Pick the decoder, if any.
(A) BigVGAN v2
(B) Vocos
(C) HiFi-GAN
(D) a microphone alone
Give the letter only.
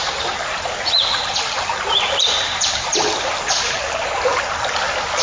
D